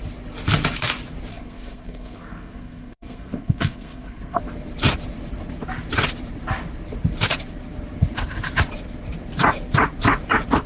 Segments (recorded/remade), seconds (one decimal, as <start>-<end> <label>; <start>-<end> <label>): 0.0-1.3 recorded; 1.3-4.4 remade; 4.4-10.7 recorded